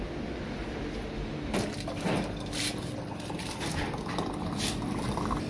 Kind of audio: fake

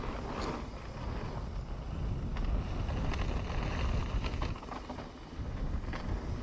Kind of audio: real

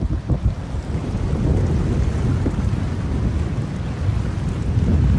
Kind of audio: real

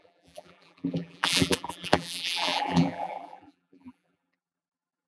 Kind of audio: fake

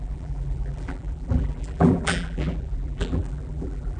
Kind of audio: fake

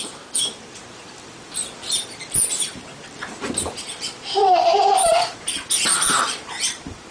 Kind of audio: fake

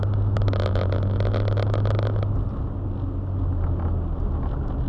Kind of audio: real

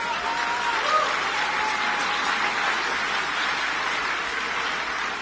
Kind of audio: fake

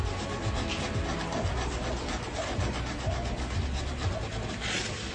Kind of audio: real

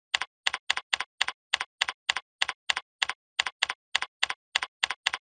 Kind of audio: real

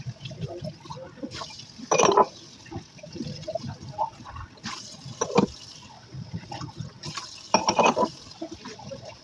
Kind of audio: fake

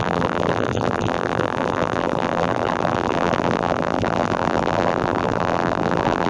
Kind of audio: fake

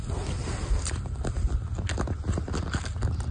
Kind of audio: real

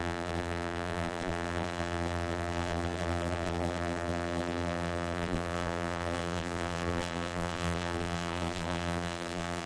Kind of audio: fake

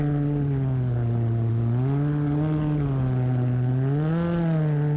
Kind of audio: real